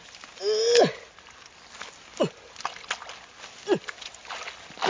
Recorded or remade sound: recorded